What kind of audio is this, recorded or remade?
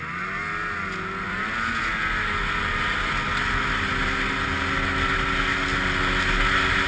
recorded